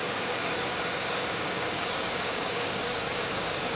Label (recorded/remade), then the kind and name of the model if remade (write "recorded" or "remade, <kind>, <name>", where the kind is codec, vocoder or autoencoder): remade, codec, DAC